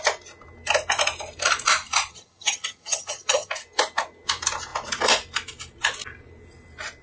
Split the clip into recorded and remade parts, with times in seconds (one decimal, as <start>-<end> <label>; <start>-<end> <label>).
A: 0.0-2.1 recorded; 2.1-3.5 remade; 3.5-7.0 recorded